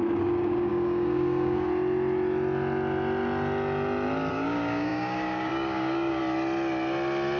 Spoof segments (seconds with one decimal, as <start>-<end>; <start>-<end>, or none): 0.0-1.7; 4.3-6.2